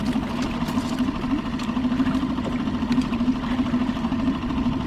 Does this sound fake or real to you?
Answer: real